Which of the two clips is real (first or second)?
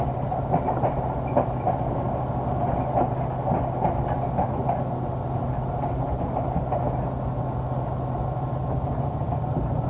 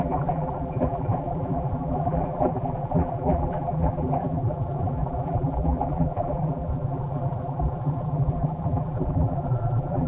first